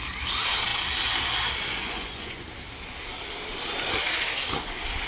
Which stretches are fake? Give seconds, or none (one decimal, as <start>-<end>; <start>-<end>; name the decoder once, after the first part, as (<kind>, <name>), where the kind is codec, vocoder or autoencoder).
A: 1.8-2.5 (vocoder, Vocos)